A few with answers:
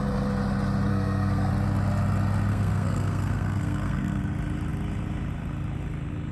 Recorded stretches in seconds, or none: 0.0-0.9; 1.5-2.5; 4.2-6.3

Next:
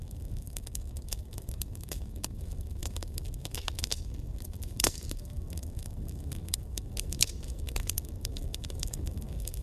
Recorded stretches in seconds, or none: none

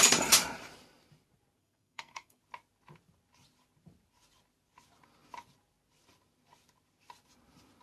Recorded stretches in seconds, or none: 0.0-1.6; 2.4-7.8

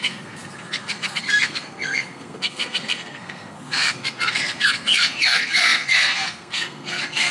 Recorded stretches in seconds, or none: none

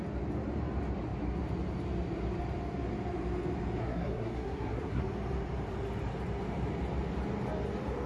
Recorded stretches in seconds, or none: 0.0-3.8; 5.0-8.1

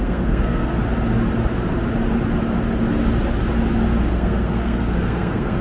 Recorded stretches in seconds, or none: 0.8-4.1

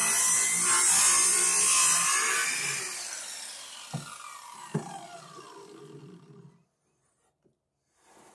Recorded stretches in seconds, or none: 0.0-8.3